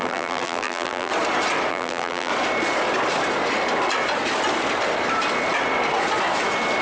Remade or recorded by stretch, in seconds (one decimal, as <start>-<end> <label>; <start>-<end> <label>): 0.0-1.1 remade; 1.1-1.7 recorded; 1.7-2.3 remade; 2.3-6.8 recorded